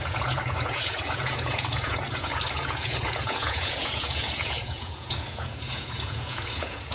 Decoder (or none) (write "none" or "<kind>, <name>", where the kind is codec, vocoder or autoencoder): vocoder, Vocos